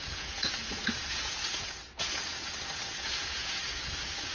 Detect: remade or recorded remade